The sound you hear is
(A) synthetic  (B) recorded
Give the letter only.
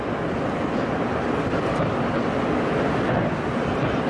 B